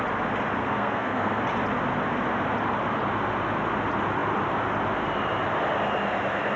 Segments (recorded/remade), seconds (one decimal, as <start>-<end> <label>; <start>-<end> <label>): 0.0-0.6 recorded; 0.6-1.4 remade; 1.4-6.6 recorded